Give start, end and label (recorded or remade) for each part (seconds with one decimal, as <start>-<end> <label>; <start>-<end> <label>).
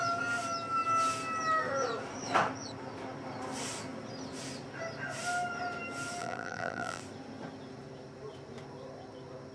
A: 0.0-6.2 recorded; 6.2-7.0 remade; 7.0-9.5 recorded